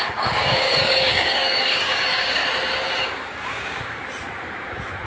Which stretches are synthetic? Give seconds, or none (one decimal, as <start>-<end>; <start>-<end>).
0.0-2.4; 3.0-4.0

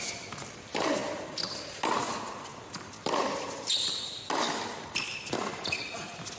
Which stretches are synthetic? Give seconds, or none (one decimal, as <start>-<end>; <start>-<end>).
none

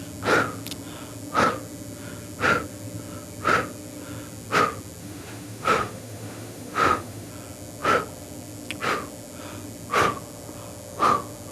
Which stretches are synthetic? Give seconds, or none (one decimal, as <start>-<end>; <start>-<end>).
5.0-7.3

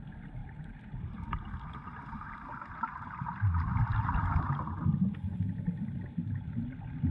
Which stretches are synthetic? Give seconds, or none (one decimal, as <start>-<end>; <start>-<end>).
0.4-2.3

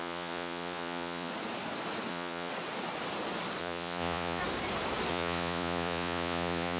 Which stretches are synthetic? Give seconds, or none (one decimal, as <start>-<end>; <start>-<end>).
0.0-1.3; 2.1-2.5; 3.6-4.4; 5.1-6.8

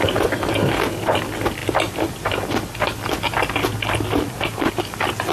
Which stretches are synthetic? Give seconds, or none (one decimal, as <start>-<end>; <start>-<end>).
none

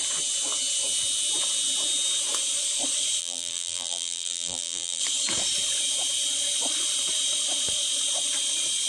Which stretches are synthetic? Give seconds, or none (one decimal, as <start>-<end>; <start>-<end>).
3.2-5.0